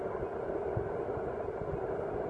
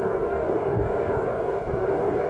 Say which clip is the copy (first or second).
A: second